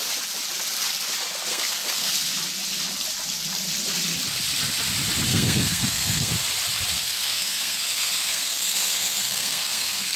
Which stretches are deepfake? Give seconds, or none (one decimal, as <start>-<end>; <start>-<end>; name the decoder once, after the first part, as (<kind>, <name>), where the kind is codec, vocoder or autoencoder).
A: 1.5-2.1 (codec, SNAC); 5.3-6.3; 6.9-10.2